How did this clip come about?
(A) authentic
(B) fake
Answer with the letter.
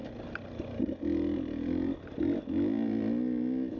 A